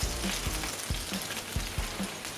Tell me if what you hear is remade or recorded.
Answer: recorded